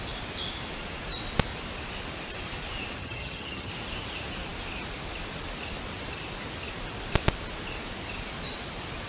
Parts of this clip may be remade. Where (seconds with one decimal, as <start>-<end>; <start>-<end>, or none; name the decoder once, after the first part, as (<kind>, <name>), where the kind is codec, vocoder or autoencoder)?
3.0-3.7 (vocoder, HiFi-GAN)